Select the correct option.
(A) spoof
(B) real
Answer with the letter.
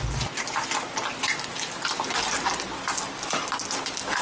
B